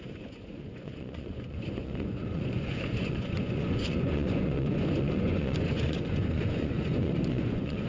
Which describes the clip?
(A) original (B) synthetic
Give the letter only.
B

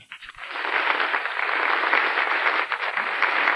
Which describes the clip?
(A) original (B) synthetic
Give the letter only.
B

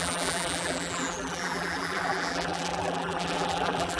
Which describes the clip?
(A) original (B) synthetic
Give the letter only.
B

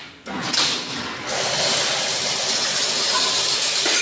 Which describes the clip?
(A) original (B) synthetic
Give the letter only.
A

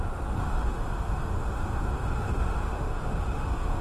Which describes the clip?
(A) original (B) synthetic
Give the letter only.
B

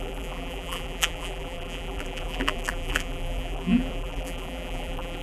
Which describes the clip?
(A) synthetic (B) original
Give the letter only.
A